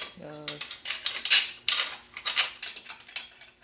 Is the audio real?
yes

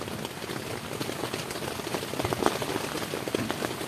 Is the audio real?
yes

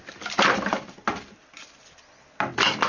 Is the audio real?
yes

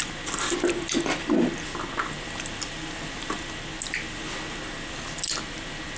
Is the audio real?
yes